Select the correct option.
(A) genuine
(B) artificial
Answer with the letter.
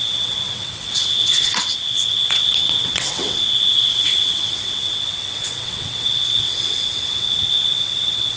B